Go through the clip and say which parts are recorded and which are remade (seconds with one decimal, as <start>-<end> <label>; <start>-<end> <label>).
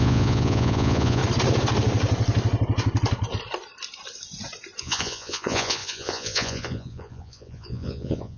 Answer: 0.0-1.2 remade; 1.2-4.8 recorded; 4.8-8.4 remade